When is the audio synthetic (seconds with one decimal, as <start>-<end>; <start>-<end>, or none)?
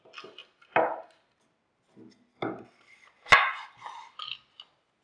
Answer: none